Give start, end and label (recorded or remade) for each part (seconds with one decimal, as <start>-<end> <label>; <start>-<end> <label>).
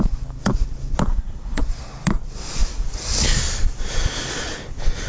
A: 0.0-1.1 recorded; 1.1-1.6 remade; 1.6-5.1 recorded